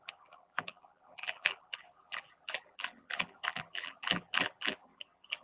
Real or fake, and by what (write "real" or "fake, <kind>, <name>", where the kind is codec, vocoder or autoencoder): fake, vocoder, BigVGAN v2